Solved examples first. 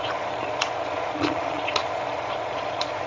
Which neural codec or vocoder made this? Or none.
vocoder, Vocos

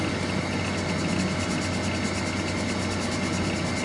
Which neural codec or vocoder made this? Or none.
none